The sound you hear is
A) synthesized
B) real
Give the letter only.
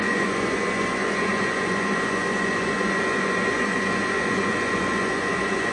A